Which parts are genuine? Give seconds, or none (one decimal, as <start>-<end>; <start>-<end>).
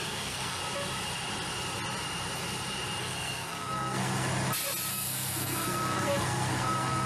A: 0.6-3.0; 4.3-4.9